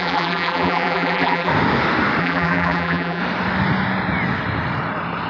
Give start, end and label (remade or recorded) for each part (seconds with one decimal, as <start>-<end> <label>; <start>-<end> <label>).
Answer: 0.0-1.5 remade; 1.5-2.2 recorded; 2.2-3.2 remade; 3.2-5.3 recorded